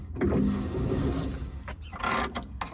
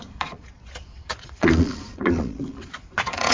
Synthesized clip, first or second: second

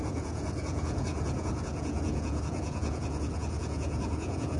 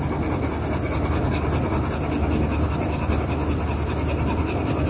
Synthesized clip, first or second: first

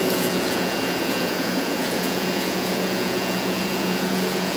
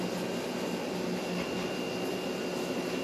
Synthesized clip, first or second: first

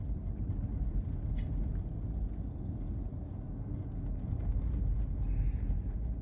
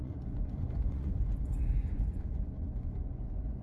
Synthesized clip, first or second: second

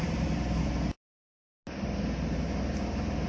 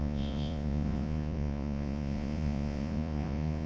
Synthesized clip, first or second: second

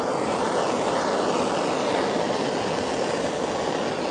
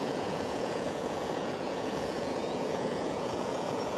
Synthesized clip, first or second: second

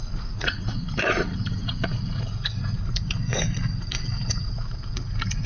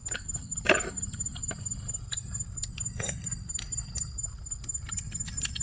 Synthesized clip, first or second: first